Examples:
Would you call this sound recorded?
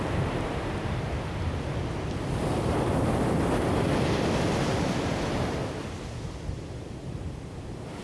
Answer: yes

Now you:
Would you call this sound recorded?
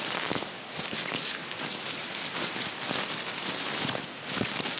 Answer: yes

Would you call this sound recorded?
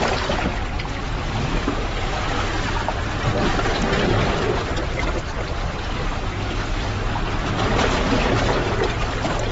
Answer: yes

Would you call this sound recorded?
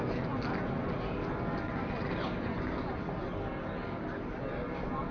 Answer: yes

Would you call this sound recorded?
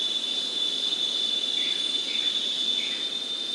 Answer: yes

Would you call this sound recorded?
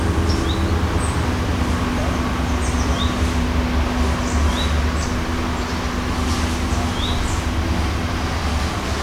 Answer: yes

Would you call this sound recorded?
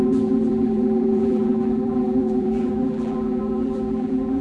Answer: no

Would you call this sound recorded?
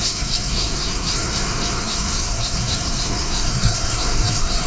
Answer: no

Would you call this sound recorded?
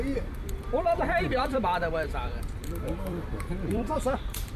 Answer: no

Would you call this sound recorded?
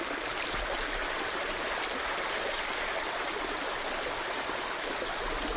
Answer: yes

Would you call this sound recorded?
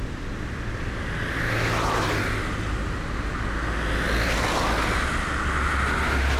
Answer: yes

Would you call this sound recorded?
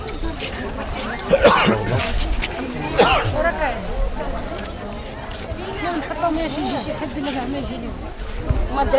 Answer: yes